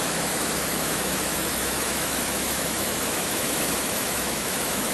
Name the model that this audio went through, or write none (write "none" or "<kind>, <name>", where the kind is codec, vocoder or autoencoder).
autoencoder, DAC-VAE